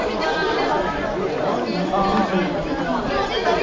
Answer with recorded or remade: recorded